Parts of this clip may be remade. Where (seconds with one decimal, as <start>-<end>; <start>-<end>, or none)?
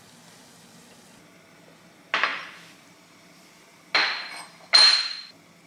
none